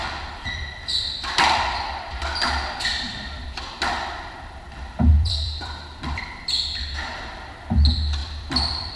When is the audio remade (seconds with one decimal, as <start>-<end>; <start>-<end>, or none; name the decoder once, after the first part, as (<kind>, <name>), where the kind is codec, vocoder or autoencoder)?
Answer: 0.0-1.2 (vocoder, BigVGAN v2); 5.1-6.2; 8.2-9.0